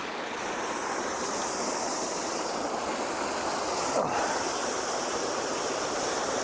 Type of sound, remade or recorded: recorded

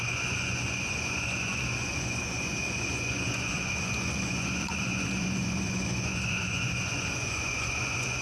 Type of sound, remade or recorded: remade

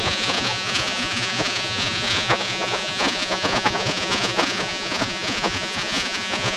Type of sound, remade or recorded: remade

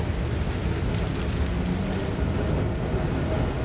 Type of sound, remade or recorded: recorded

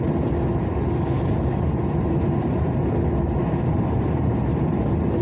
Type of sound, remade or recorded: recorded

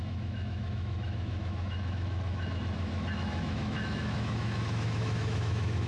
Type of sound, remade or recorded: remade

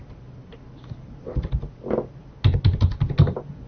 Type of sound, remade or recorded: recorded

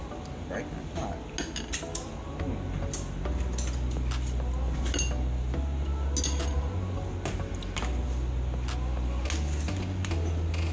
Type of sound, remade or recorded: recorded